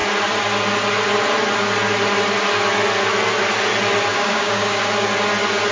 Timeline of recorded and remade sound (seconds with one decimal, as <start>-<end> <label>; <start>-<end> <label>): 0.0-4.1 recorded; 4.1-4.8 remade; 4.8-5.7 recorded